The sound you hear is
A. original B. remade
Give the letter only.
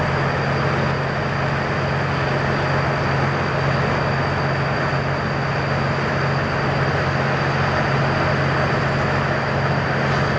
A